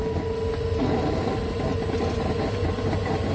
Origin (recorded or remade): recorded